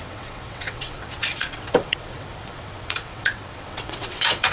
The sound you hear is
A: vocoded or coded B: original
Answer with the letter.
A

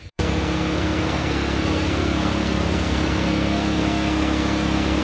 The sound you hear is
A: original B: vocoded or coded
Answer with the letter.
B